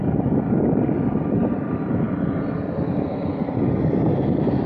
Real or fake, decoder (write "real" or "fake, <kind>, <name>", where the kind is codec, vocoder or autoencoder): real